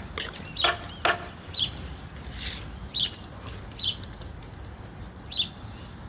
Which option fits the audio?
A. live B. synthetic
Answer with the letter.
A